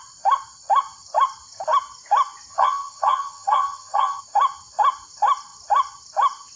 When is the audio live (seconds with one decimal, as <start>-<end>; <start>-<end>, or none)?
0.0-2.5; 4.2-6.6